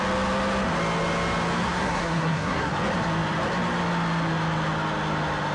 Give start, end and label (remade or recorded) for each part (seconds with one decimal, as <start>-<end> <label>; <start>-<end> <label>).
0.0-1.6 recorded; 1.6-2.7 remade; 2.7-5.5 recorded

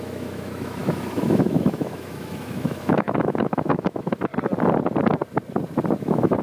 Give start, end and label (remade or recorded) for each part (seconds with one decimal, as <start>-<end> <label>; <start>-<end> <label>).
0.0-4.3 remade; 4.3-6.0 recorded; 6.0-6.4 remade

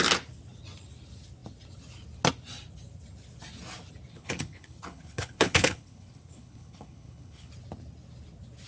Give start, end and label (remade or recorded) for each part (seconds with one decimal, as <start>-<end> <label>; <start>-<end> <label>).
0.0-4.1 recorded; 4.1-7.5 remade; 7.5-8.7 recorded